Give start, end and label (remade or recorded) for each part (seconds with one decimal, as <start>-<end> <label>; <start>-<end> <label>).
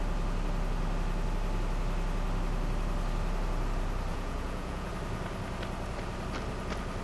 0.0-4.1 recorded; 4.1-4.9 remade; 4.9-7.0 recorded